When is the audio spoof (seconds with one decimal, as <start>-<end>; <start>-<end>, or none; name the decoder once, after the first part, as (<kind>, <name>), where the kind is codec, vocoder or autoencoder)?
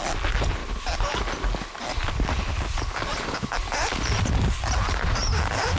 none